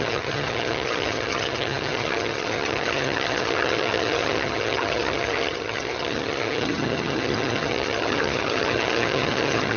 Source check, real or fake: fake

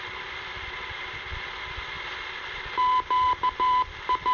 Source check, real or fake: real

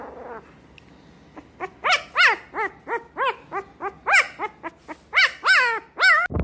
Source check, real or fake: real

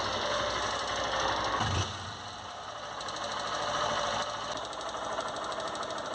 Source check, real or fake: real